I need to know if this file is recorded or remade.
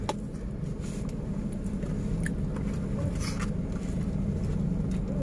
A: recorded